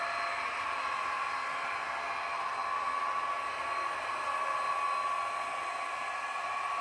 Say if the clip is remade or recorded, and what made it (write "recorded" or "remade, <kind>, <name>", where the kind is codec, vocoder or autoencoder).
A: recorded